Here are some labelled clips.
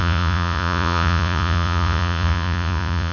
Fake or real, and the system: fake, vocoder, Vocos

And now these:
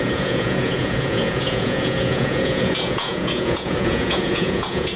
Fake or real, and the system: fake, vocoder, Vocos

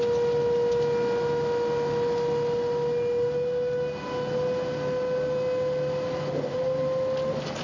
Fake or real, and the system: real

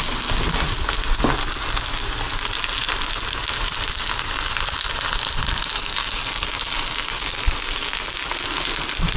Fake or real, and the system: real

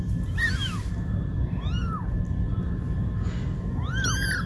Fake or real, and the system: real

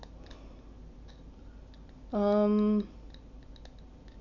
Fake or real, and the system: real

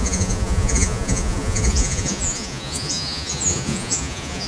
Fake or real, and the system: fake, vocoder, Vocos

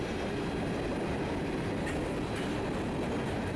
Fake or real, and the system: real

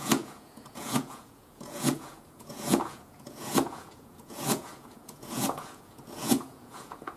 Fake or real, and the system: fake, vocoder, Vocos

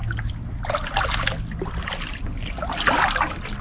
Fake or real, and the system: real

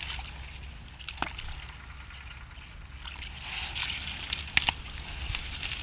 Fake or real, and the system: real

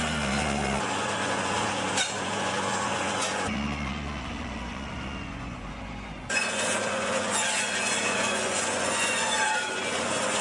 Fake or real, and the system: fake, vocoder, Vocos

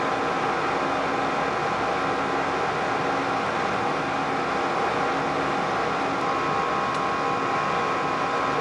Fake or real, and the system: real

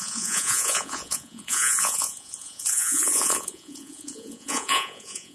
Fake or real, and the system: fake, vocoder, Vocos